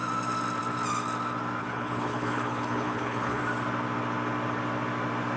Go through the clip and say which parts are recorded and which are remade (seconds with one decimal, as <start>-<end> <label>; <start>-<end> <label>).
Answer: 0.0-1.6 recorded; 1.6-3.4 remade; 3.4-5.4 recorded